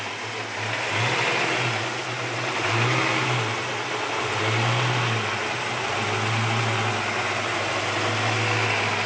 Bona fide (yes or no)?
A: yes